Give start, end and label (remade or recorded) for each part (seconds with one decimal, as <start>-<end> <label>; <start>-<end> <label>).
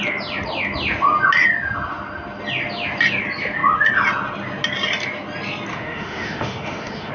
0.0-5.7 recorded; 5.7-7.1 remade